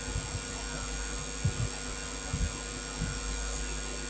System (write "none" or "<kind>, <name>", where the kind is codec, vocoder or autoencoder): none